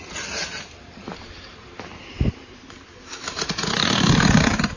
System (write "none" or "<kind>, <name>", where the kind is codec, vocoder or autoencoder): vocoder, BigVGAN v2